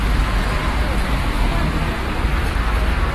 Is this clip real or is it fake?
real